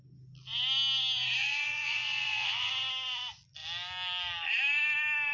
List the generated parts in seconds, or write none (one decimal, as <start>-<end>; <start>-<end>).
1.4-2.7